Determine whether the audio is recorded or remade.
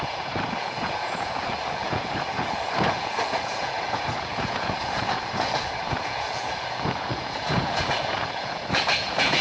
remade